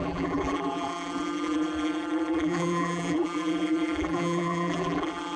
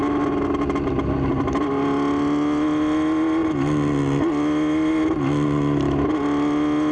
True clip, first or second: second